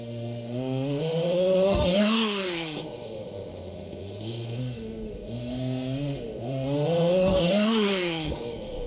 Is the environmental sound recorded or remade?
remade